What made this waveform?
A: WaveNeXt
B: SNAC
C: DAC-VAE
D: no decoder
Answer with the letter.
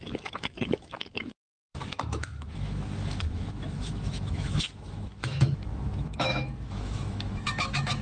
C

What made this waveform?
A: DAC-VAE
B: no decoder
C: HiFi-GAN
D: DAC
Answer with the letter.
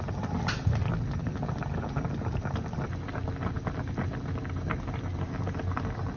B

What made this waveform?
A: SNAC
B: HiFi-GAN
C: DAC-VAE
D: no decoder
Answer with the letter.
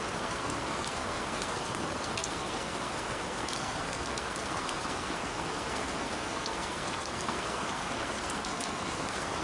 A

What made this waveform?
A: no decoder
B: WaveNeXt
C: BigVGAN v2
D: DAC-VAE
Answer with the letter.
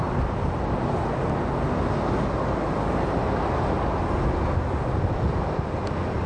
A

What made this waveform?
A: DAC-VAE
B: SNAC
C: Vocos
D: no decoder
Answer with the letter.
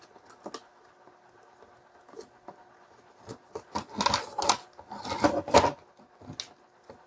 D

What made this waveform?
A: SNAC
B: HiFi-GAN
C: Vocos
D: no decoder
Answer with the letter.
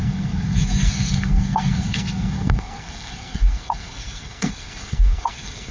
A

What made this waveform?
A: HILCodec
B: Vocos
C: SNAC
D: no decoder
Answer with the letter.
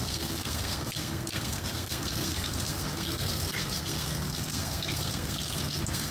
C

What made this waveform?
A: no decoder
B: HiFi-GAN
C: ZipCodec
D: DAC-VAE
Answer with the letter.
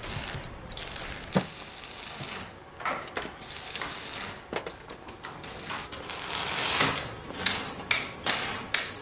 A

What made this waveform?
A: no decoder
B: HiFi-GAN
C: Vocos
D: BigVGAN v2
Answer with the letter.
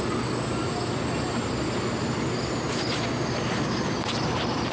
A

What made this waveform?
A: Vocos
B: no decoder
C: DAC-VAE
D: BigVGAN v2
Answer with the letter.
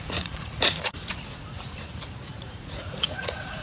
A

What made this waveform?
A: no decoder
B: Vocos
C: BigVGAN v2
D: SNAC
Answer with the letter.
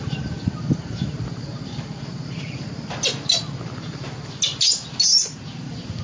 A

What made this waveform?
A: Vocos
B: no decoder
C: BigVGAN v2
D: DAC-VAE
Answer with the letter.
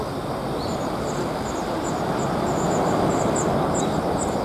B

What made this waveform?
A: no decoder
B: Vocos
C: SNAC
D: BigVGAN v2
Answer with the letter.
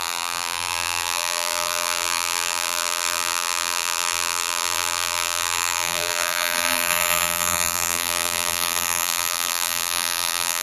D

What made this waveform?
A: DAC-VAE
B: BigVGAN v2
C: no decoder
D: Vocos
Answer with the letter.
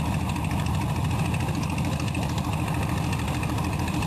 C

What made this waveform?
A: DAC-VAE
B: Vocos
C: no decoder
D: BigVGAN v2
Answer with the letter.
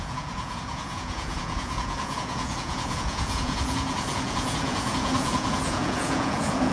B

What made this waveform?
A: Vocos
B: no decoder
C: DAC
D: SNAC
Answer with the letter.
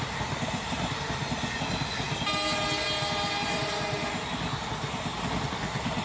B